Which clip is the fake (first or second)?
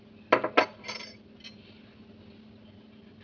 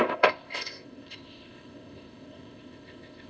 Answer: second